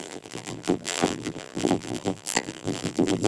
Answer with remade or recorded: remade